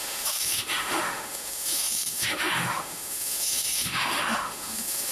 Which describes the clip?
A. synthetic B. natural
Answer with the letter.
A